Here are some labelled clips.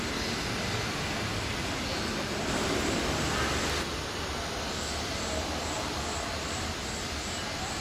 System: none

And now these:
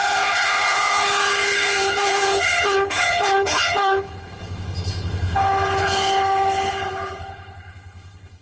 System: codec, HILCodec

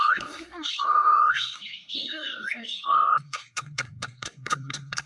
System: codec, SNAC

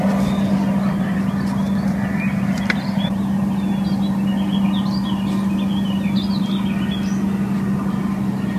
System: none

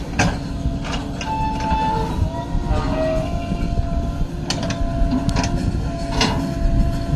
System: none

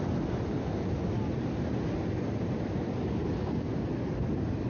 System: none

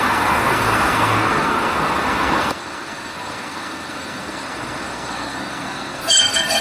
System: codec, SNAC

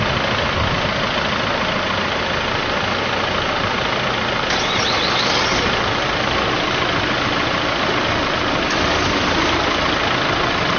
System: none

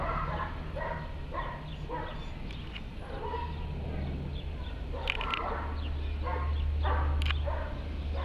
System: none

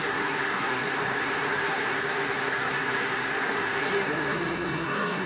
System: codec, SNAC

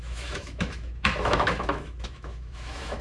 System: autoencoder, DAC-VAE